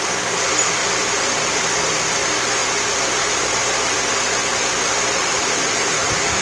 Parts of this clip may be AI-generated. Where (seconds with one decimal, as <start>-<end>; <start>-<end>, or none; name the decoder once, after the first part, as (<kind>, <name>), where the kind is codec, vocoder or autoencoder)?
0.8-1.6 (vocoder, BigVGAN v2); 2.6-4.0; 5.3-6.4